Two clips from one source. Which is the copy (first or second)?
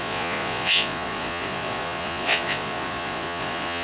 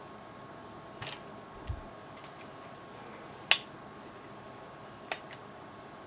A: first